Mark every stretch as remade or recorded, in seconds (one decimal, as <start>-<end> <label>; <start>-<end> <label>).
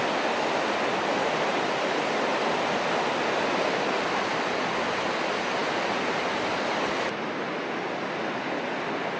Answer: 0.0-9.2 recorded